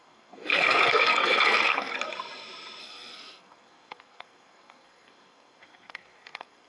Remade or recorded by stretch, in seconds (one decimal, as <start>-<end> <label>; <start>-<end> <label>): 0.0-1.9 remade; 1.9-2.8 recorded; 2.8-6.7 remade